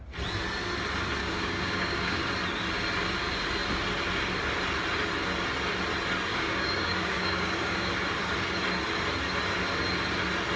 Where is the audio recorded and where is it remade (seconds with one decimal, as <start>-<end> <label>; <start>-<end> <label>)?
0.0-1.2 recorded; 1.2-2.2 remade; 2.2-6.3 recorded; 6.3-7.9 remade; 7.9-10.6 recorded